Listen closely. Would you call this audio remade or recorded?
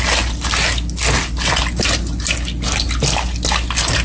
recorded